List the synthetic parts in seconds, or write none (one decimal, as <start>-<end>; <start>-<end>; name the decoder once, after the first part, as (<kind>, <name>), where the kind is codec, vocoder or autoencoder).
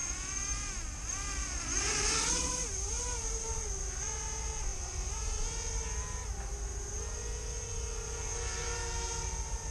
none